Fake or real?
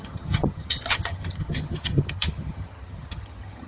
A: fake